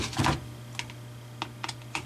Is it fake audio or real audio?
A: real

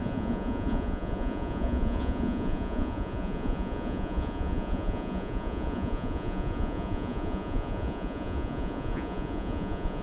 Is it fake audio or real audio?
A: fake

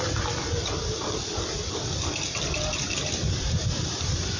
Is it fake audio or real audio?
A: real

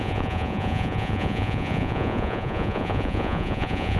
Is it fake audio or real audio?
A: fake